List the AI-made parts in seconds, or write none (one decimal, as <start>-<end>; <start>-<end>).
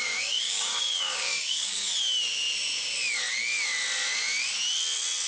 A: 0.0-1.8